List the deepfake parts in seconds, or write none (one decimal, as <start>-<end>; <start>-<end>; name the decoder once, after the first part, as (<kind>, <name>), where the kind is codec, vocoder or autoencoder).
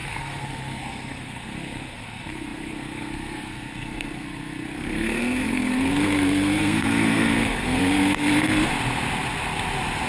0.0-8.7 (codec, SNAC)